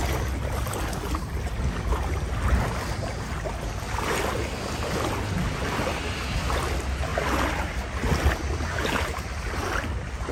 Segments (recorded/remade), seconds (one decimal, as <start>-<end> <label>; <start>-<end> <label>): 0.0-10.3 recorded